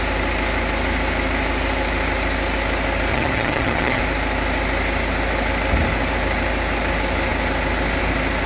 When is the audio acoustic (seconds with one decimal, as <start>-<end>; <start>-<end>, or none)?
0.0-3.1; 4.0-8.5